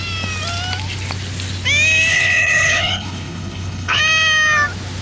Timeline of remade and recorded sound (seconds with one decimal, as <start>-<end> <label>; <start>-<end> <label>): 0.0-2.1 recorded; 2.1-4.0 remade; 4.0-5.0 recorded